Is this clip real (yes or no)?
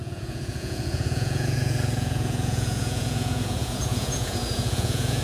no